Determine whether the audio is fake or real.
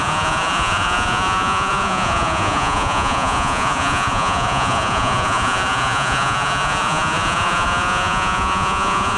fake